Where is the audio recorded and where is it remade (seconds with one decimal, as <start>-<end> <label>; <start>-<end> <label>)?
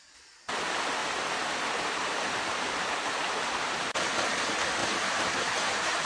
0.0-1.0 recorded; 1.0-3.9 remade; 3.9-4.8 recorded; 4.8-6.1 remade